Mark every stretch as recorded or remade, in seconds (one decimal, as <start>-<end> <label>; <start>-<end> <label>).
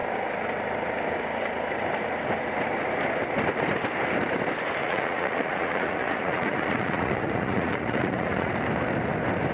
0.0-4.8 recorded; 4.8-8.5 remade; 8.5-9.5 recorded